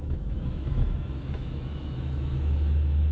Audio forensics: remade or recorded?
remade